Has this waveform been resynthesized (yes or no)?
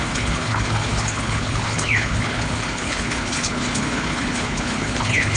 yes